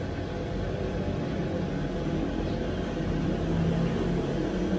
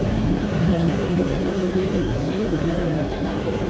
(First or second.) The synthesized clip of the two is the second